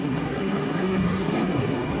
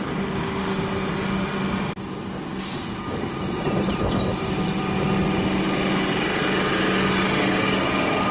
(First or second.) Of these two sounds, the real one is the second